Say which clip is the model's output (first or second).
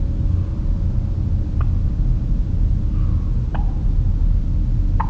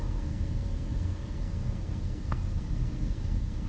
second